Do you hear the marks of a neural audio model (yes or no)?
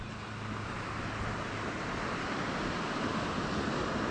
yes